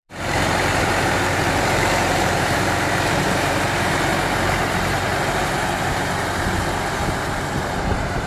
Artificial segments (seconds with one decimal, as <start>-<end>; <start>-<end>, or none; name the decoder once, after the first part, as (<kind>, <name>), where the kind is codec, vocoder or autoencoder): 0.0-4.1 (vocoder, BigVGAN v2); 4.6-5.1; 7.9-8.3